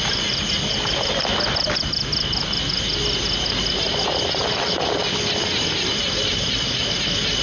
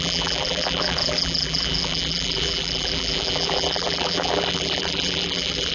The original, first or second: first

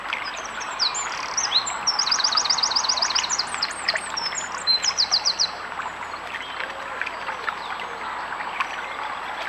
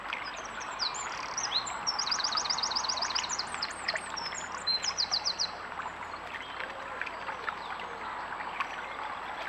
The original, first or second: first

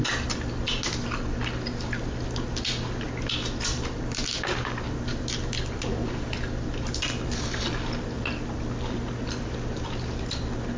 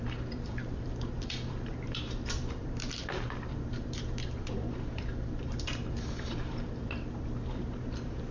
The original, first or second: first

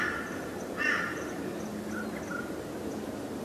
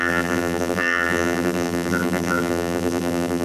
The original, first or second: first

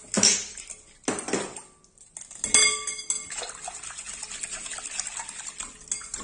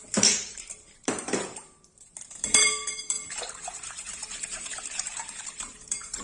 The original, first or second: first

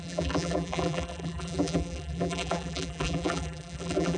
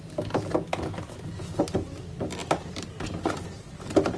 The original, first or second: second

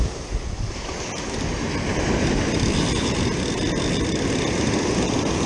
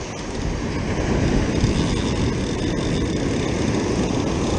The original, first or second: second